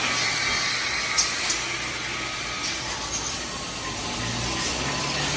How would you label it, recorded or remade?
recorded